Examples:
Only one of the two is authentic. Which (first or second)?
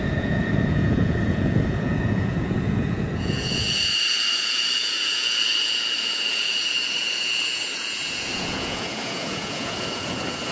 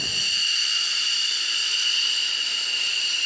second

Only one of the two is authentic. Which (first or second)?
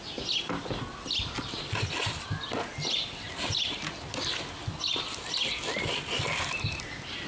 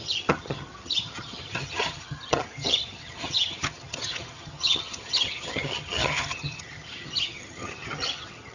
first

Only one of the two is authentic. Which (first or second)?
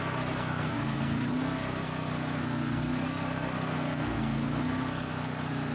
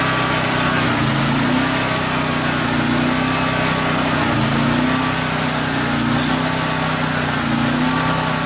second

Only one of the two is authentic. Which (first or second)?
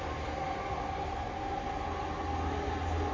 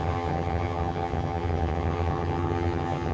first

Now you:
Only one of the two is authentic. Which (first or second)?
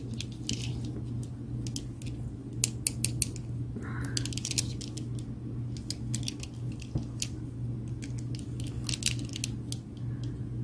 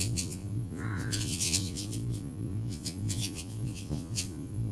first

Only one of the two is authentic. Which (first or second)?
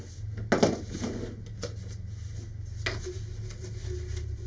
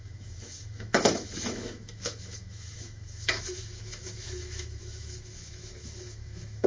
first